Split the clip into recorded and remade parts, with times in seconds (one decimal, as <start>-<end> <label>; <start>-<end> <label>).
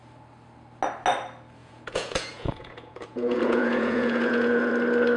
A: 0.0-1.6 recorded; 1.6-4.7 remade; 4.7-5.2 recorded